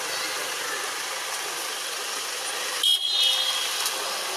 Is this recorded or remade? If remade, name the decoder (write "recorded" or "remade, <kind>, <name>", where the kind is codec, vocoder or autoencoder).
recorded